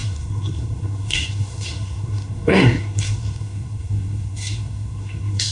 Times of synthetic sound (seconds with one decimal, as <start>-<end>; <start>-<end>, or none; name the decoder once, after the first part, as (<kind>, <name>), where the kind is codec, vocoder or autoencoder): 0.0-5.5 (codec, SNAC)